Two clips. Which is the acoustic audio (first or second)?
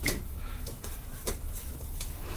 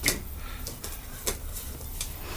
second